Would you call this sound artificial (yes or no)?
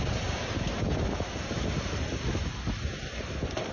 no